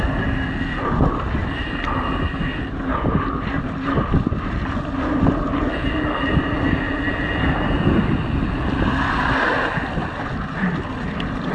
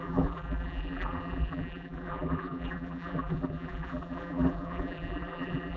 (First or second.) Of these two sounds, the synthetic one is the second